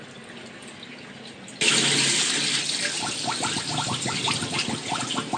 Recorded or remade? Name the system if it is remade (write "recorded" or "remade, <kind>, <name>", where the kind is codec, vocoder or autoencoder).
recorded